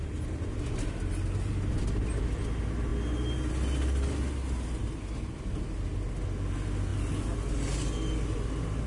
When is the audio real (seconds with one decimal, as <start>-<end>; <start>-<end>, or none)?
0.0-8.9